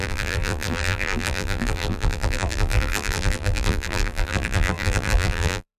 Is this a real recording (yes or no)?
no